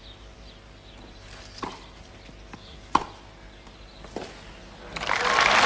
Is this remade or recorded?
recorded